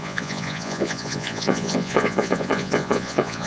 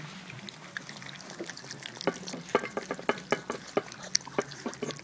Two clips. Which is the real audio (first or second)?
second